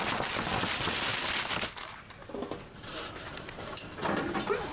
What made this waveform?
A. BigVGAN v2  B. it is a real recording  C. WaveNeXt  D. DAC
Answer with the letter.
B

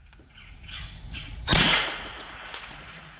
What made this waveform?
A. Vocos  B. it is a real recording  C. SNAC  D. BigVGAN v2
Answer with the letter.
A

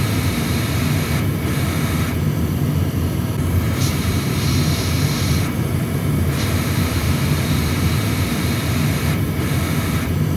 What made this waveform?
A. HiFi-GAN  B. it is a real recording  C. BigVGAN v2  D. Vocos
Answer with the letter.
C